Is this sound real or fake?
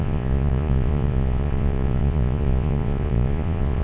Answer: fake